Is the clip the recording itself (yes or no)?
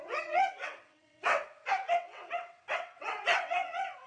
no